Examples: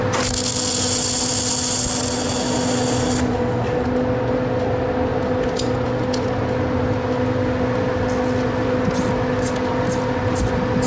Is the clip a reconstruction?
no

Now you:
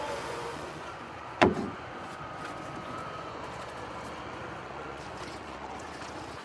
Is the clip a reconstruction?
yes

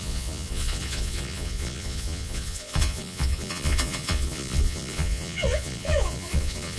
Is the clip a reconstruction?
yes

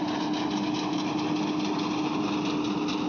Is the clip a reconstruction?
no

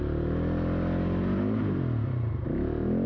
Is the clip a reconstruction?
no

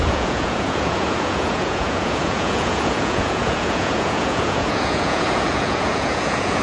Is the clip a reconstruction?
yes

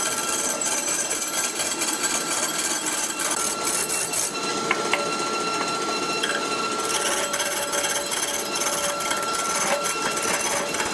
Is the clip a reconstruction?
no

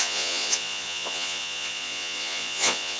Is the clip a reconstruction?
yes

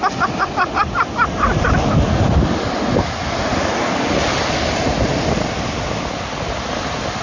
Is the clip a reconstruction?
no